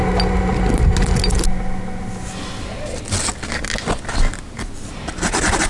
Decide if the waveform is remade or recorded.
recorded